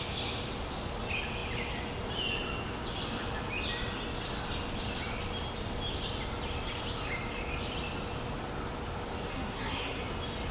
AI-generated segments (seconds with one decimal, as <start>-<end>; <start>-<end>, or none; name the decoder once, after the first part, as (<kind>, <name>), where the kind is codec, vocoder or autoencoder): 9.3-10.0 (codec, SNAC)